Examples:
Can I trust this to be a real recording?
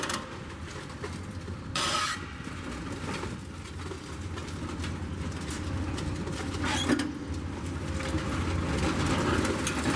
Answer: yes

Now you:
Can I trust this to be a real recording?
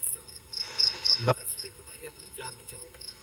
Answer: no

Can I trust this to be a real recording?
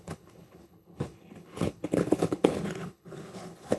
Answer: no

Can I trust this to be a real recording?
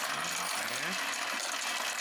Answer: yes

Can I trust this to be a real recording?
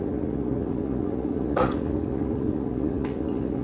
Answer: no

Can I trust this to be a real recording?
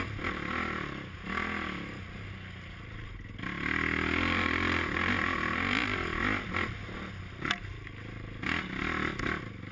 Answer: yes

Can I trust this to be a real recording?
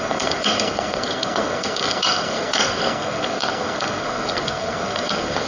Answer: no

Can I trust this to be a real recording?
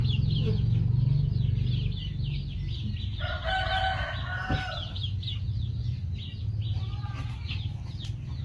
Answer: yes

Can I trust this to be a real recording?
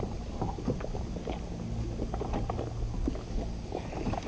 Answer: yes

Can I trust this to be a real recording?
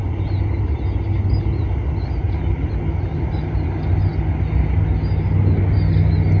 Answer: yes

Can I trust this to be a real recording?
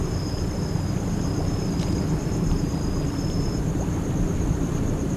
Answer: yes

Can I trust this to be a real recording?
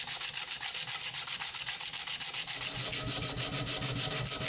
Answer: yes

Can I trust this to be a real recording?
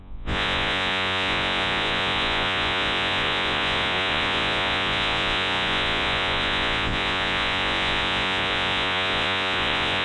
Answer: no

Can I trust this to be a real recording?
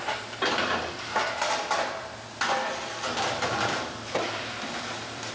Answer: no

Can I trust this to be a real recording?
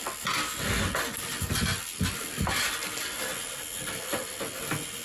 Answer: yes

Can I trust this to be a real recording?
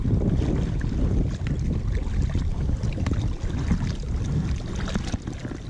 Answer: yes